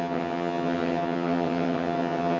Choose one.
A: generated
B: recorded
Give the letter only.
A